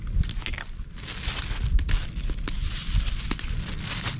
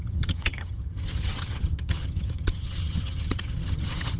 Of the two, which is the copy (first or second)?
second